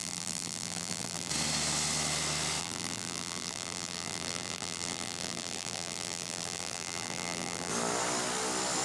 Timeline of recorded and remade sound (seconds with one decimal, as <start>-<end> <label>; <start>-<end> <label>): 0.0-1.3 remade; 1.3-2.6 recorded; 2.6-7.7 remade; 7.7-8.8 recorded